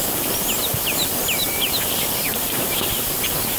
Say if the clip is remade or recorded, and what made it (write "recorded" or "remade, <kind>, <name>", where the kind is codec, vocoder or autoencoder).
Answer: remade, vocoder, BigVGAN v2